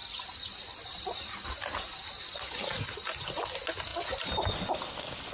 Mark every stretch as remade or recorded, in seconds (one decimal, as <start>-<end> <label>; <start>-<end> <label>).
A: 0.0-5.3 recorded